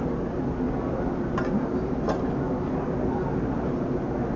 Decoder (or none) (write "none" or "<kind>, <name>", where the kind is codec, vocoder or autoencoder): none